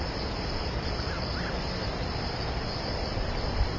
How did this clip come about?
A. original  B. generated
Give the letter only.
B